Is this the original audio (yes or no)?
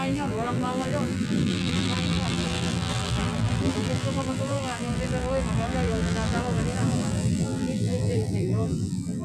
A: no